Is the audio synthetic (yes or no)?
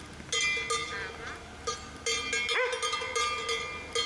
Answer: no